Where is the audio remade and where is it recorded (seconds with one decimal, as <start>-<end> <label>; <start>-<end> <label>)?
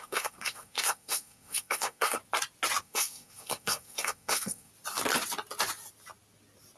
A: 0.0-2.2 remade; 2.2-2.8 recorded; 2.8-4.7 remade; 4.7-6.8 recorded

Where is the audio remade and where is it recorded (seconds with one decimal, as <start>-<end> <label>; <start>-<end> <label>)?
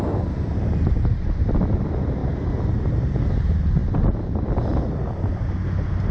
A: 0.0-6.1 recorded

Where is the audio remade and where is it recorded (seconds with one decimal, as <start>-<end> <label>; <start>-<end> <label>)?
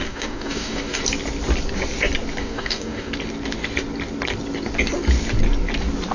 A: 0.0-1.0 remade; 1.0-2.4 recorded; 2.4-3.1 remade; 3.1-6.1 recorded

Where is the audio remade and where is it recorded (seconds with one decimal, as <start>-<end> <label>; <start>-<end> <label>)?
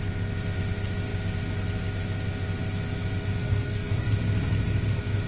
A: 0.0-3.4 recorded; 3.4-4.1 remade; 4.1-5.3 recorded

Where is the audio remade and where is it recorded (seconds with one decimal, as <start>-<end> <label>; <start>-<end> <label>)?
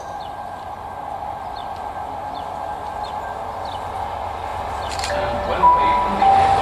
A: 0.0-6.6 recorded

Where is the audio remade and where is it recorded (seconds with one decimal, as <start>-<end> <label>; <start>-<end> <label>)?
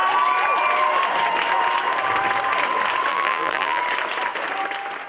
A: 0.0-3.1 recorded; 3.1-3.8 remade; 3.8-5.1 recorded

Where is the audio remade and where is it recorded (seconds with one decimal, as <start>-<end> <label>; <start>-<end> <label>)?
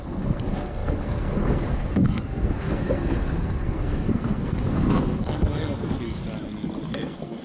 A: 0.0-6.2 remade; 6.2-6.9 recorded; 6.9-7.4 remade